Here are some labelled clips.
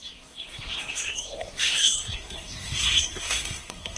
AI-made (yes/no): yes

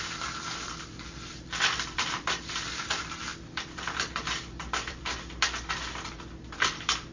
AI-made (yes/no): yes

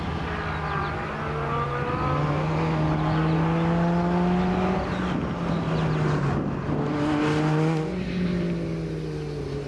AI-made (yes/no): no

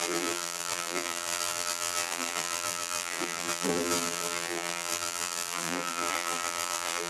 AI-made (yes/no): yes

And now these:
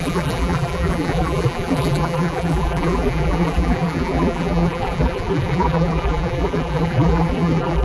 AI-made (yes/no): yes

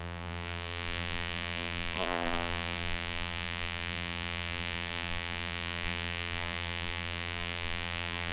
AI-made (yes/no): yes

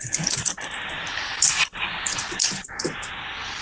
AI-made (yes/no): no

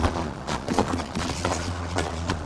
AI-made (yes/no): yes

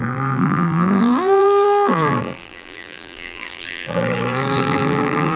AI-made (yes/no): yes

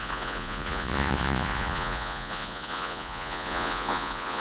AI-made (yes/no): yes